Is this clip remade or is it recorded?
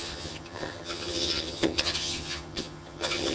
remade